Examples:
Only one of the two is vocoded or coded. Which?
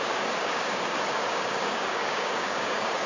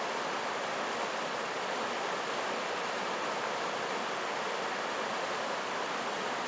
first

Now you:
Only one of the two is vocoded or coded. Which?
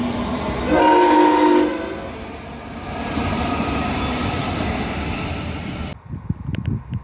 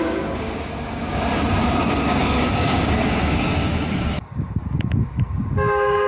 second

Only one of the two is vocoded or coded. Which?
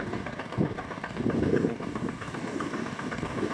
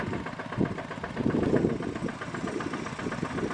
first